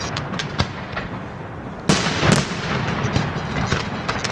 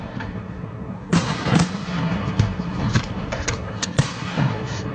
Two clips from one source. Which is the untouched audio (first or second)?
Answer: first